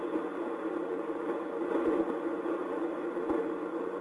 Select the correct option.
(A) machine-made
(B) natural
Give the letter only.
A